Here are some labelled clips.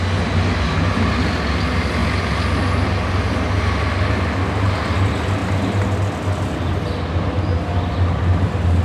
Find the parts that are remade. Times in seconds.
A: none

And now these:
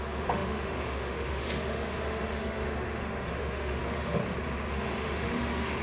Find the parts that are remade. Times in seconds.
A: 0.0-4.2 (autoencoder, DAC-VAE); 4.7-5.8

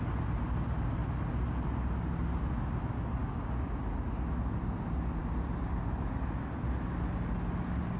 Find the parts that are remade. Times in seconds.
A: 3.2-3.8 (codec, DAC)

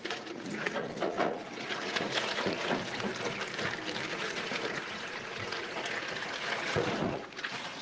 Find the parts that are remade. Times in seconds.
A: 0.0-3.1 (vocoder, Vocos); 4.1-7.8

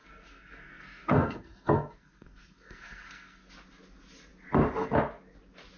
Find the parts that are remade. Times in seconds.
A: 0.0-3.5 (codec, SNAC)

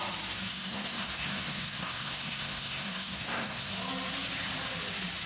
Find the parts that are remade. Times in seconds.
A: 0.5-3.7 (codec, SNAC)

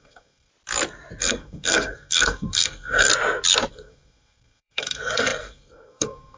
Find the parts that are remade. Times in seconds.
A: 0.0-0.5 (codec, SNAC); 1.2-3.1; 3.7-6.4